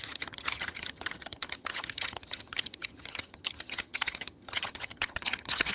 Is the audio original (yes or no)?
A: no